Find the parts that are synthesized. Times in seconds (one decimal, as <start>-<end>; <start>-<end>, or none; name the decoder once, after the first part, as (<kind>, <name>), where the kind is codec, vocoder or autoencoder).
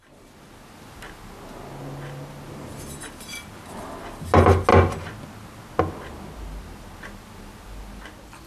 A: none